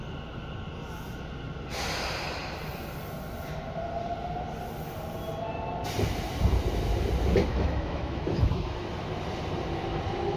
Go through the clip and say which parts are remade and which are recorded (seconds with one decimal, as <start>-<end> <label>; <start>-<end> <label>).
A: 0.0-7.5 recorded; 7.5-8.9 remade; 8.9-10.4 recorded